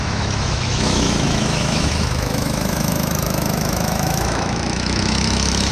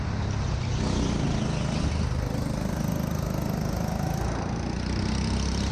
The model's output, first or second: first